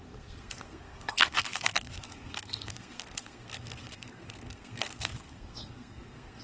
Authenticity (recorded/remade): remade